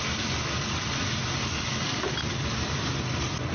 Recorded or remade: recorded